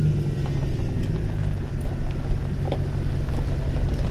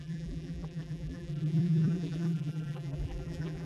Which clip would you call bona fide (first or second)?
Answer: first